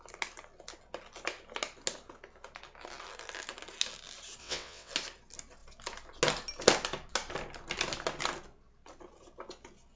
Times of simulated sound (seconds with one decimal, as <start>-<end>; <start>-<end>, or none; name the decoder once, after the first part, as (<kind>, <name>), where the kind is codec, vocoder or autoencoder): 4.4-4.9 (vocoder, WaveNeXt)